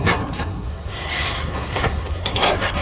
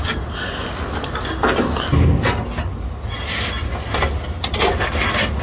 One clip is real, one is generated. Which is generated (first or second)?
first